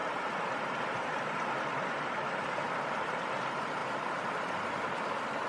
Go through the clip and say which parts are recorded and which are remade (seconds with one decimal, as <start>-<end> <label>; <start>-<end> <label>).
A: 0.0-3.3 remade; 3.3-5.5 recorded